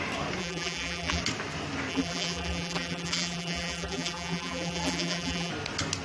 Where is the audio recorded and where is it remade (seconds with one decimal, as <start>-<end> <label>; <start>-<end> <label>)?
0.0-0.4 recorded; 0.4-1.2 remade; 1.2-1.9 recorded; 1.9-5.5 remade; 5.5-6.0 recorded